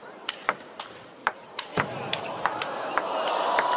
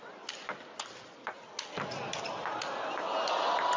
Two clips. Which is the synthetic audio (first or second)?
first